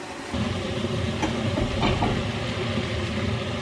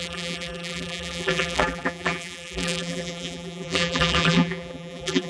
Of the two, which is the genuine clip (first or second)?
first